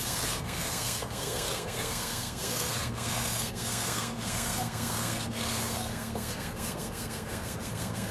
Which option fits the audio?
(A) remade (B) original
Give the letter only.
A